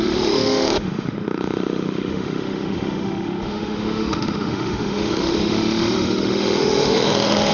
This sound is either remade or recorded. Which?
remade